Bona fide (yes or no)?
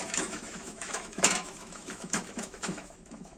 no